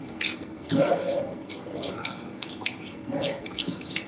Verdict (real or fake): fake